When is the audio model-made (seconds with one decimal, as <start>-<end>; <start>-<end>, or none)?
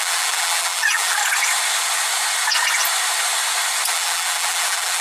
0.0-1.2; 3.9-5.0